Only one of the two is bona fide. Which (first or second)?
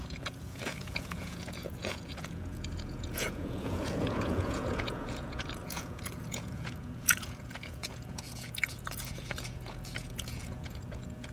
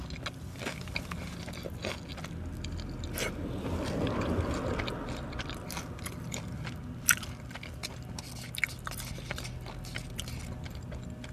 second